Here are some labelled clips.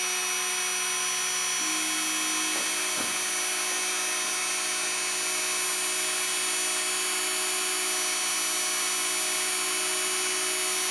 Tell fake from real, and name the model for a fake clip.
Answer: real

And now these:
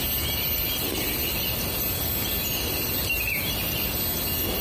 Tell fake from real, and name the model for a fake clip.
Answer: real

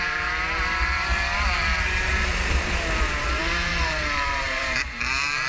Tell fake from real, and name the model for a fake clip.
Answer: fake, vocoder, BigVGAN v2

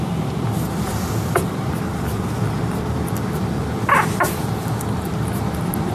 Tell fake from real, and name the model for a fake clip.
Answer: fake, vocoder, BigVGAN v2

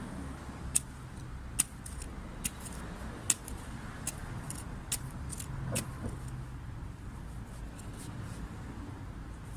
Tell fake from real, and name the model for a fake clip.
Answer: real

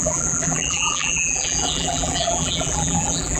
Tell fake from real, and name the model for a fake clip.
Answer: fake, vocoder, BigVGAN v2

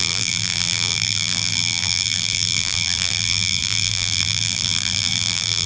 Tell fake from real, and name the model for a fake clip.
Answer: fake, vocoder, BigVGAN v2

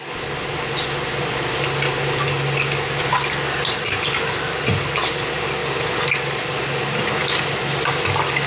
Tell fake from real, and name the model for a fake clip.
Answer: real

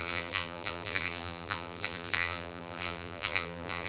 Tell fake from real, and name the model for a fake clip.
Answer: fake, vocoder, BigVGAN v2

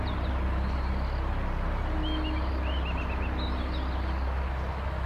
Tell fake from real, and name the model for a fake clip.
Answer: real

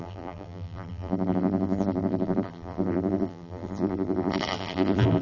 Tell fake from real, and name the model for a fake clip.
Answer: fake, vocoder, BigVGAN v2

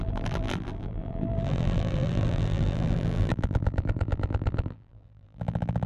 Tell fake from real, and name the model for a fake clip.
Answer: fake, vocoder, BigVGAN v2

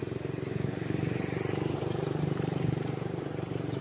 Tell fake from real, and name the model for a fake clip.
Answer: fake, vocoder, BigVGAN v2